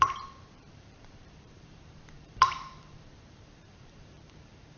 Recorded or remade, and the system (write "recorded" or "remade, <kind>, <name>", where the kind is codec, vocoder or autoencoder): remade, vocoder, BigVGAN v2